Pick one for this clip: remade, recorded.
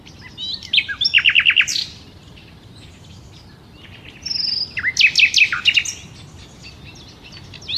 recorded